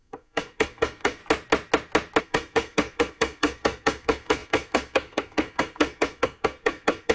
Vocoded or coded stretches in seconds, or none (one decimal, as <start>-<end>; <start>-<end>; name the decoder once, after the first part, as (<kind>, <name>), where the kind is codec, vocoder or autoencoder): 0.0-1.2 (codec, SNAC); 2.2-7.1